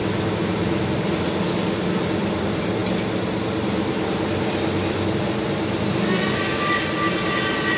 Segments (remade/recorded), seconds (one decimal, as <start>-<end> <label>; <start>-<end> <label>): 0.0-7.8 recorded